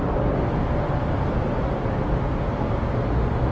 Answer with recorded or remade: recorded